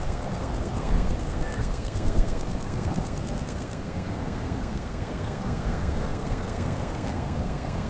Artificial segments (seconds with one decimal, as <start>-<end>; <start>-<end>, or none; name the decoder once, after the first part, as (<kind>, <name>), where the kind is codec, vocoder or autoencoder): 0.0-7.9 (codec, SNAC)